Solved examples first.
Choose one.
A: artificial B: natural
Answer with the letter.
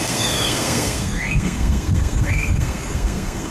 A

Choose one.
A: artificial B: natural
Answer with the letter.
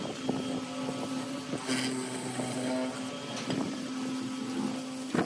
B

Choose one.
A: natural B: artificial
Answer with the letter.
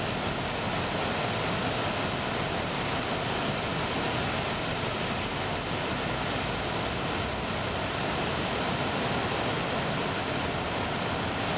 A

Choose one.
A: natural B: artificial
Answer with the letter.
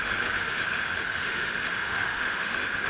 B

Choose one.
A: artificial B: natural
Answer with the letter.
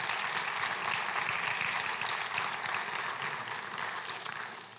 B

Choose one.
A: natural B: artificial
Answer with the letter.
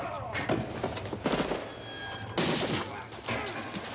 A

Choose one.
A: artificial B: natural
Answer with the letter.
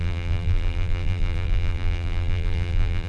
A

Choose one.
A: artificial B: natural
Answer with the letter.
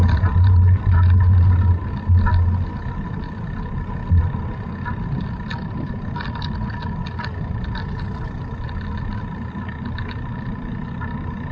B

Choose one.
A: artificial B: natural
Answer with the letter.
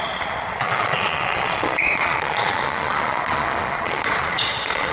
A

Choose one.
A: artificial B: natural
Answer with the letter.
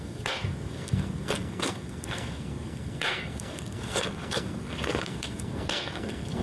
A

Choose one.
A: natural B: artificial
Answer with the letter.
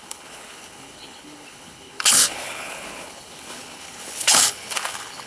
B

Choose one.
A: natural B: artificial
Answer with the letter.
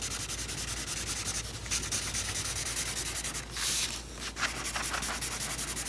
A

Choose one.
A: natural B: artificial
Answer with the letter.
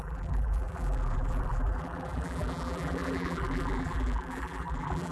B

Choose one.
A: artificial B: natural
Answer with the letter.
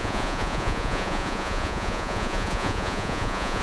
A